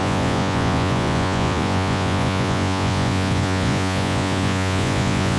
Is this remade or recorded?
remade